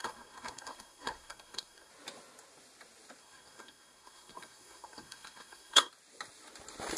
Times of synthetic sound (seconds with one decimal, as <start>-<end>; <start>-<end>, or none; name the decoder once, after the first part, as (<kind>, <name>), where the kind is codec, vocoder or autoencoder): 0.0-1.9 (codec, SNAC); 3.2-5.9